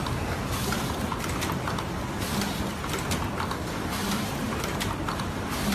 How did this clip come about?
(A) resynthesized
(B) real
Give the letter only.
B